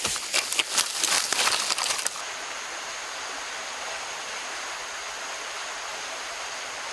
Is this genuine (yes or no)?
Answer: yes